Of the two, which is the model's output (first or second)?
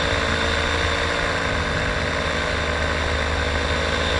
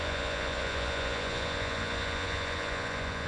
second